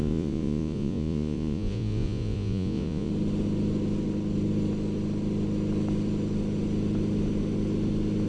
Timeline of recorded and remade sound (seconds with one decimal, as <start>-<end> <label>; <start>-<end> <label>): 0.0-3.1 remade; 3.1-8.3 recorded